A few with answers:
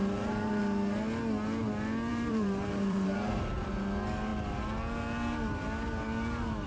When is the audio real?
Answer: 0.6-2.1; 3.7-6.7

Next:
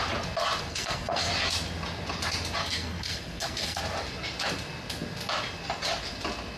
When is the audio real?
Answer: 0.0-0.7; 1.3-2.6; 3.8-6.6

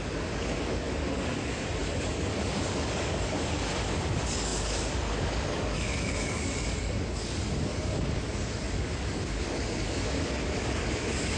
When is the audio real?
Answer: none

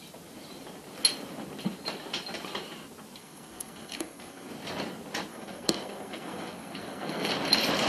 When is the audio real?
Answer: 0.0-3.2; 4.5-5.3; 7.3-7.9

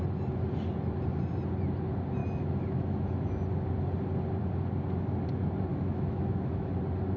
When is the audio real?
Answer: 0.0-2.2; 3.3-5.7; 6.8-7.2

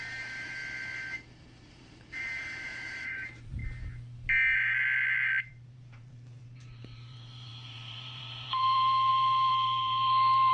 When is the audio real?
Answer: 0.6-1.7; 3.6-5.4

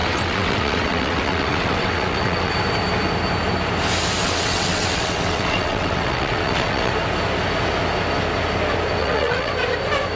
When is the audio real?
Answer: 2.5-4.2; 6.9-9.0; 9.5-10.2